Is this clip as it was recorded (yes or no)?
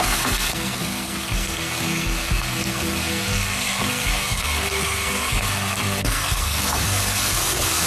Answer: no